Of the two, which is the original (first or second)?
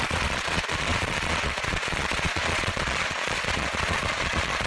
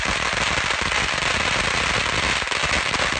second